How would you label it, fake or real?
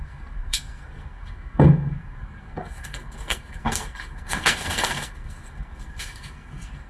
fake